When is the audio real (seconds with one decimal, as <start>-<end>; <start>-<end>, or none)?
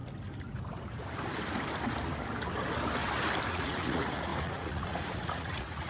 0.0-3.5